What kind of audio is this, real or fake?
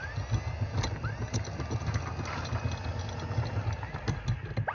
real